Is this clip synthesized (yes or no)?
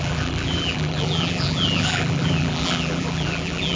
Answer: yes